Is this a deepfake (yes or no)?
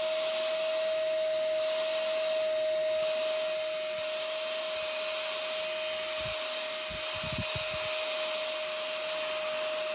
no